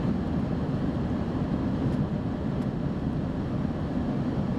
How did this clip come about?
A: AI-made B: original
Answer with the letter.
B